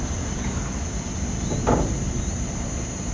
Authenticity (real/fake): real